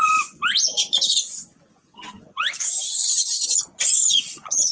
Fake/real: fake